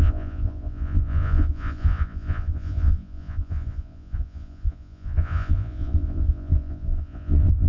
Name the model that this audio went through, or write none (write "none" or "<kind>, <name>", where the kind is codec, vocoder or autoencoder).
vocoder, Vocos